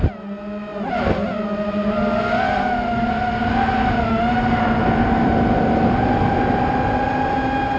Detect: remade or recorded recorded